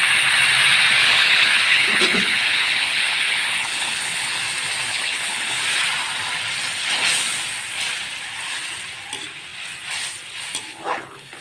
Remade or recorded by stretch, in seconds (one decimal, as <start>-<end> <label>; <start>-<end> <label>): 0.0-1.0 recorded; 1.0-4.4 remade; 4.4-4.9 recorded; 4.9-5.6 remade; 5.6-10.7 recorded; 10.7-11.4 remade